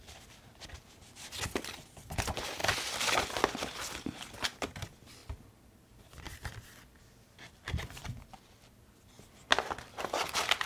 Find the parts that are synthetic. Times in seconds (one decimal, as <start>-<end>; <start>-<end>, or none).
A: none